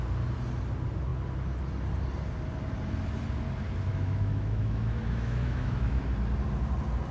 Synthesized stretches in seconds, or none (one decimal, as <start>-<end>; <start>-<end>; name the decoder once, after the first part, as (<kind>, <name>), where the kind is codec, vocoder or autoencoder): 3.9-6.0 (autoencoder, DAC-VAE)